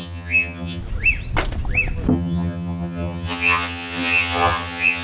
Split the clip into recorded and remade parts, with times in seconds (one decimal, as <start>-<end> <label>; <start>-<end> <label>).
0.0-0.8 remade; 0.8-2.1 recorded; 2.1-5.0 remade